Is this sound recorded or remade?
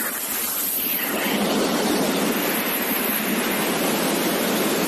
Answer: recorded